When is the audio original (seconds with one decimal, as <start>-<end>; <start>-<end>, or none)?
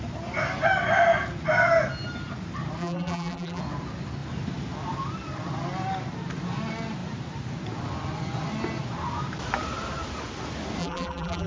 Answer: 0.0-2.8; 3.6-10.8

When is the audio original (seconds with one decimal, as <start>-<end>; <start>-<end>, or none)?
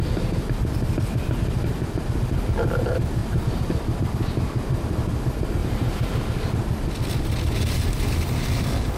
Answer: 0.0-3.2; 4.0-5.6; 6.7-9.0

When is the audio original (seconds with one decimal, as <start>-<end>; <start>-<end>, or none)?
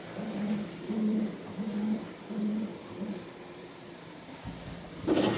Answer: none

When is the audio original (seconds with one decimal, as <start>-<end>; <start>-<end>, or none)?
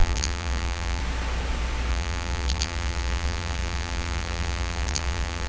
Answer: 1.0-1.9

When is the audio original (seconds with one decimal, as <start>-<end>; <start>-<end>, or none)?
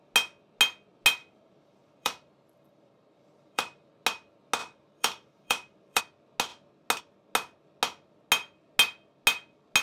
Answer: 0.0-1.2; 3.9-4.6; 6.0-9.8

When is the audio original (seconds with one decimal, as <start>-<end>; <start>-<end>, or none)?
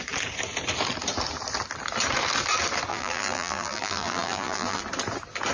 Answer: 0.0-2.9; 4.8-5.5